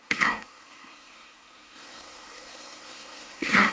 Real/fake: fake